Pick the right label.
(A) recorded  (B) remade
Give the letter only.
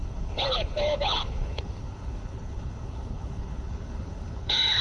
B